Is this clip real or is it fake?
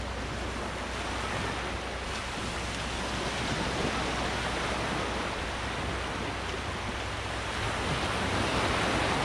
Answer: real